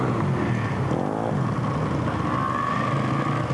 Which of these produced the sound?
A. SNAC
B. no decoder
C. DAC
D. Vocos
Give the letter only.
B